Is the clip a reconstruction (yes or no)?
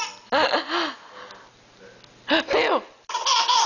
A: no